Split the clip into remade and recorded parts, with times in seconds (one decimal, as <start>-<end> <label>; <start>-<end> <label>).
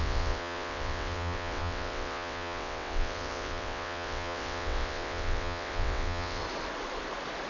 0.0-6.4 remade; 6.4-7.5 recorded